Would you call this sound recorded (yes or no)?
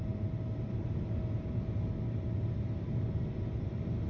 yes